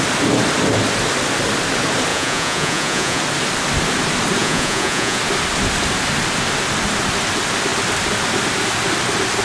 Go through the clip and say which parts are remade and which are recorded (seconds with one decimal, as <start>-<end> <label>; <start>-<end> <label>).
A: 0.0-2.1 recorded; 2.1-3.2 remade; 3.2-4.4 recorded; 4.4-5.2 remade; 5.2-9.4 recorded